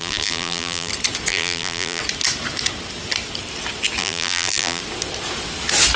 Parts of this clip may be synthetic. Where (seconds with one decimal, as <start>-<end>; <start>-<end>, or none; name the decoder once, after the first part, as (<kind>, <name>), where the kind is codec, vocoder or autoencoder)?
0.0-0.9 (vocoder, BigVGAN v2); 1.3-2.0; 4.0-4.8